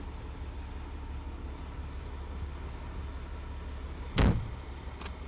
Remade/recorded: recorded